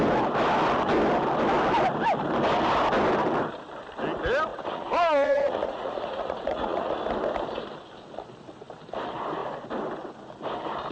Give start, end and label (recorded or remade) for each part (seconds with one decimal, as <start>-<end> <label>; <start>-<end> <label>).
0.0-4.5 recorded; 4.5-7.0 remade; 7.0-10.9 recorded